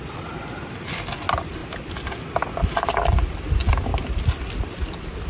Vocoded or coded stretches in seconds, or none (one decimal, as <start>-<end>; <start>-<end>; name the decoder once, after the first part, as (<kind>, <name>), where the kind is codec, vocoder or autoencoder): 1.6-3.5 (vocoder, BigVGAN v2); 3.9-5.3